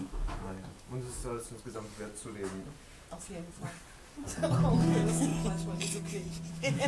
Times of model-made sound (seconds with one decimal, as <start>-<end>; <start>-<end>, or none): 0.0-1.2; 4.7-5.3; 6.5-6.9